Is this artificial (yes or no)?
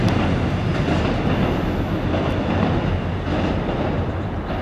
no